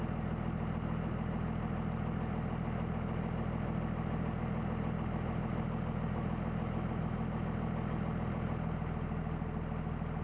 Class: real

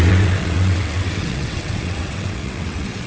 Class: fake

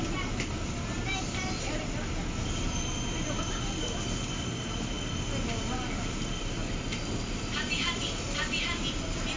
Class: real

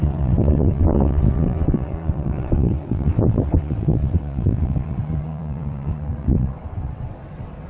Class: fake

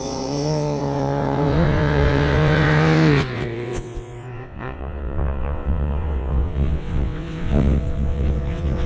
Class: fake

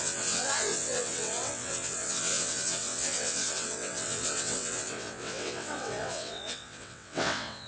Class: fake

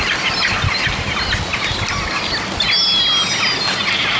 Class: real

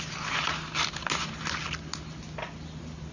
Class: real